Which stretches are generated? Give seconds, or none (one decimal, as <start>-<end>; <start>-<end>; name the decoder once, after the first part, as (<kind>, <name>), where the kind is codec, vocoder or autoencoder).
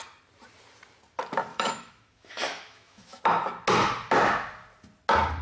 1.5-3.2 (autoencoder, DAC-VAE)